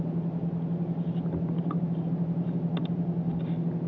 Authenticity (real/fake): real